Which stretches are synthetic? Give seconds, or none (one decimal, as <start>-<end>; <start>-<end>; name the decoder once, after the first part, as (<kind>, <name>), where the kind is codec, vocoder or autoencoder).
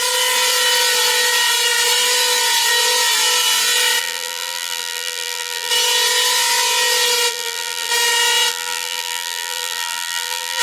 4.0-5.7 (vocoder, BigVGAN v2); 7.3-7.9; 8.5-10.6